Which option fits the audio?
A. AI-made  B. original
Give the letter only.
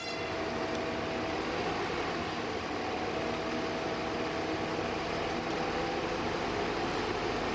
B